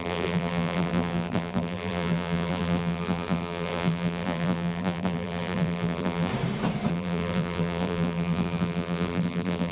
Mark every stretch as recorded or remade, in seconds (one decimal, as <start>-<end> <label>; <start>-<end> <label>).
0.0-6.3 remade; 6.3-6.9 recorded; 6.9-9.7 remade